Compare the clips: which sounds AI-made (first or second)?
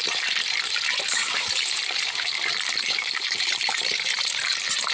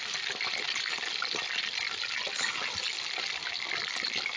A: first